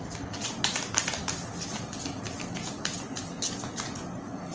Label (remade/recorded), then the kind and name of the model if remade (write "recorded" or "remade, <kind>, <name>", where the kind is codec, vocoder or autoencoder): recorded